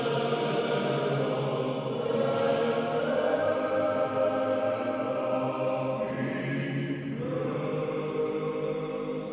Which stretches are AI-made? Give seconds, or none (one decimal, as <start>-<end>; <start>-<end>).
none